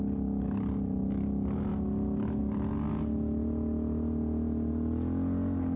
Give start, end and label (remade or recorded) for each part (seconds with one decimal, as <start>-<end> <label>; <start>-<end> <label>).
0.0-5.8 recorded

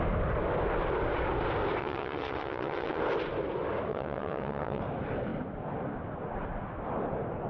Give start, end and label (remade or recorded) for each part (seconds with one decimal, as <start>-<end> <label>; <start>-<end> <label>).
0.0-1.8 recorded; 1.8-3.0 remade; 3.0-3.9 recorded; 3.9-4.8 remade; 4.8-7.5 recorded

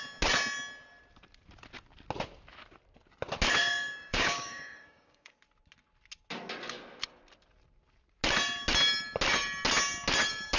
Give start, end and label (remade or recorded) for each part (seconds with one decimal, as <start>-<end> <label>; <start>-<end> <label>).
0.0-3.6 recorded; 3.6-5.3 remade; 5.3-10.6 recorded

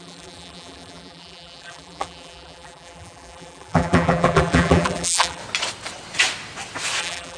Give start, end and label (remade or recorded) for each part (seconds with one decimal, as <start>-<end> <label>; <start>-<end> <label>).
0.0-5.4 remade; 5.4-7.0 recorded; 7.0-7.4 remade

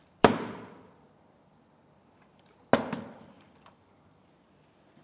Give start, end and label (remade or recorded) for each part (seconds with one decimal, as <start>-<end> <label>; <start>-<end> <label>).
0.0-1.5 remade; 1.5-3.1 recorded; 3.1-5.0 remade

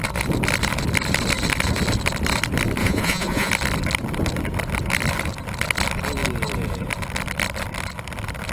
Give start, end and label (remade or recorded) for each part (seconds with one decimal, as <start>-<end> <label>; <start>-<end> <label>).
0.0-2.8 recorded; 2.8-3.5 remade; 3.5-8.5 recorded

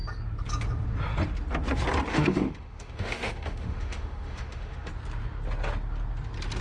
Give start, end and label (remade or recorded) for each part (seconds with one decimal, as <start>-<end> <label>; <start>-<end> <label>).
0.0-2.1 recorded; 2.1-4.9 remade; 4.9-6.6 recorded